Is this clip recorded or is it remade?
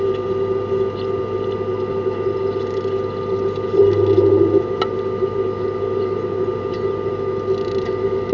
recorded